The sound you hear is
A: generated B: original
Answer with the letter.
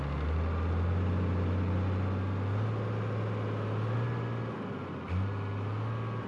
B